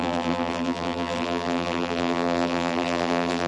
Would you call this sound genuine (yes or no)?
no